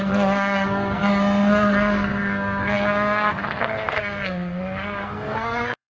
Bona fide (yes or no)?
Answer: no